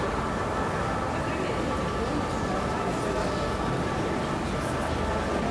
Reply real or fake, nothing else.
real